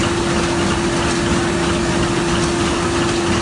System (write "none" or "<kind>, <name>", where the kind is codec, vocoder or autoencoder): none